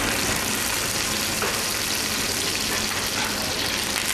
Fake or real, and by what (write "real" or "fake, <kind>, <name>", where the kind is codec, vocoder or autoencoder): fake, vocoder, BigVGAN v2